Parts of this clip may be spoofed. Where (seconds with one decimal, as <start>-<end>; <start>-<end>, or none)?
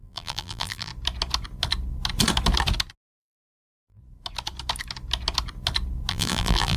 0.0-0.9; 3.2-4.0; 6.1-6.8